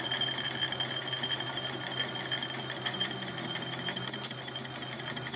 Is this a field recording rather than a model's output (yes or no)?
yes